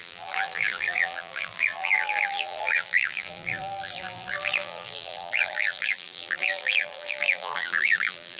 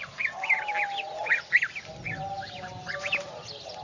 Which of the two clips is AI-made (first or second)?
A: first